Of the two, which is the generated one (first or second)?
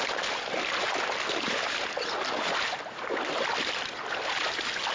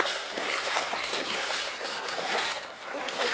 second